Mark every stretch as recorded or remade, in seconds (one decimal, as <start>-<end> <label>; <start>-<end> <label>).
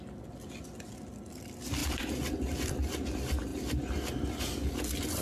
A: 0.0-5.2 recorded